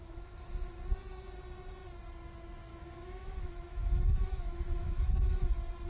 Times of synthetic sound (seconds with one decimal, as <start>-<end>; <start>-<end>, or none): 0.0-0.8; 2.7-5.5